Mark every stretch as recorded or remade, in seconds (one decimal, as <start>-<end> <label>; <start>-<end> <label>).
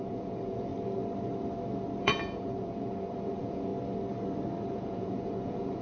0.0-0.7 remade; 0.7-2.0 recorded; 2.0-3.7 remade; 3.7-4.7 recorded; 4.7-5.8 remade